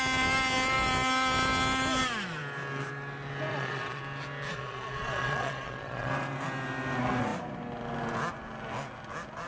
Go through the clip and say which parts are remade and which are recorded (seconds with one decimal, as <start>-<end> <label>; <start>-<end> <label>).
0.0-3.5 recorded; 3.5-4.0 remade; 4.0-4.5 recorded; 4.5-6.1 remade; 6.1-9.5 recorded